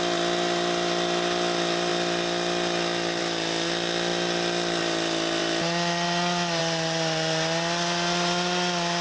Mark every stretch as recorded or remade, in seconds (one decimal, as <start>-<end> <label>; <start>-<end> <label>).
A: 0.0-9.0 recorded